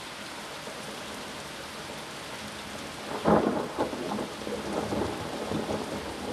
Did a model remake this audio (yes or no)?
no